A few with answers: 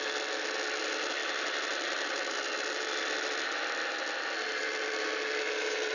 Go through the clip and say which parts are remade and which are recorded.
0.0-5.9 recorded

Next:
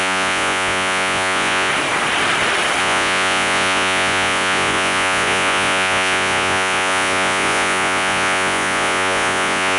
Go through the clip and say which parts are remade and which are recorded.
0.0-1.7 remade; 1.7-2.8 recorded; 2.8-9.8 remade

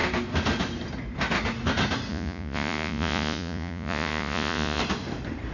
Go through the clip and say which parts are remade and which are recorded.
0.0-2.1 recorded; 2.1-4.8 remade; 4.8-5.5 recorded